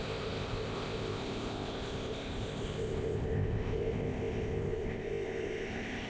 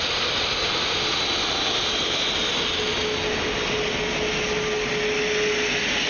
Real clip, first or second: second